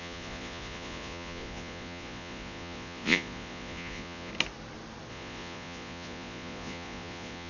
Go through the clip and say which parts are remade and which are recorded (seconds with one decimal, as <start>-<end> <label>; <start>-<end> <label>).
0.0-4.3 remade; 4.3-5.1 recorded; 5.1-7.5 remade

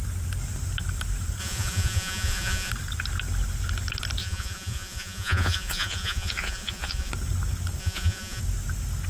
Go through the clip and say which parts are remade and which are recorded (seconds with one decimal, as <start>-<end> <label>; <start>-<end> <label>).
0.0-1.4 recorded; 1.4-2.7 remade; 2.7-4.2 recorded; 4.2-7.1 remade; 7.1-7.8 recorded; 7.8-8.4 remade; 8.4-9.1 recorded

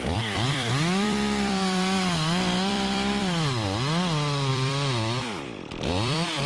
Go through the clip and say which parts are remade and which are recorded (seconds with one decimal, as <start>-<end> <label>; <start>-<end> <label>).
0.0-6.5 remade

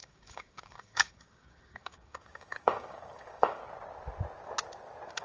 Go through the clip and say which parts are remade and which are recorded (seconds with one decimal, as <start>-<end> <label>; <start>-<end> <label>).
0.0-3.6 remade; 3.6-5.2 recorded

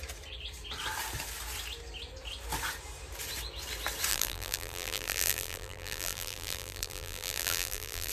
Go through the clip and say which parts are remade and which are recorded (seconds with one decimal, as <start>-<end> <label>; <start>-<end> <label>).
0.0-4.1 recorded; 4.1-8.1 remade

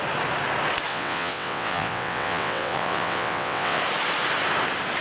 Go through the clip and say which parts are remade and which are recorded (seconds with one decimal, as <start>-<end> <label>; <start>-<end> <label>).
0.0-0.9 recorded; 0.9-3.8 remade; 3.8-5.0 recorded